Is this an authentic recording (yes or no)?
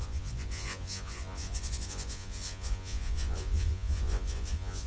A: no